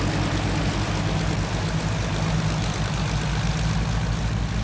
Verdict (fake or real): real